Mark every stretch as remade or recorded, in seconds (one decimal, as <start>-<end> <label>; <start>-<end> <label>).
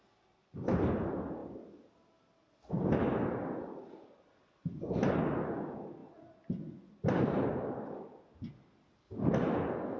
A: 0.0-6.0 recorded; 6.0-8.4 remade; 8.4-10.0 recorded